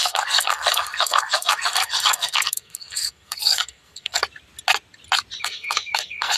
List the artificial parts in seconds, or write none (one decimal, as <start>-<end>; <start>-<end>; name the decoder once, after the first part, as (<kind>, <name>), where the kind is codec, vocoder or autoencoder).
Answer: 0.0-4.2 (codec, SNAC); 5.4-6.4

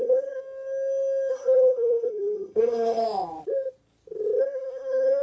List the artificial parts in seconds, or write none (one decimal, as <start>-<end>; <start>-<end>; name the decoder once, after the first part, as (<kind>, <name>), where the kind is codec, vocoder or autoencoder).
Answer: 0.0-0.4 (codec, SNAC); 1.3-3.0; 4.4-5.2